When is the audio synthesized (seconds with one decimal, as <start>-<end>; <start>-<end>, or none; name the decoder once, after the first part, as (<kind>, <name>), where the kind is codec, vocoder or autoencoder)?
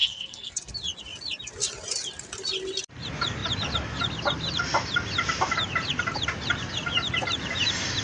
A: 0.0-0.7 (codec, SNAC)